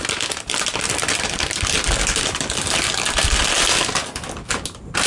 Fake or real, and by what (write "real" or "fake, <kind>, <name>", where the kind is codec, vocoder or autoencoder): real